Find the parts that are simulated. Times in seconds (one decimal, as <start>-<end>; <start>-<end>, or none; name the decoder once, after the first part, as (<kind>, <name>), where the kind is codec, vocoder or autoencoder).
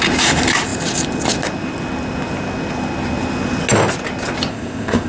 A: 4.5-5.1 (codec, ZipCodec)